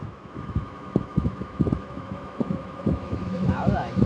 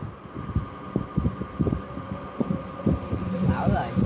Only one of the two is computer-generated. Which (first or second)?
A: first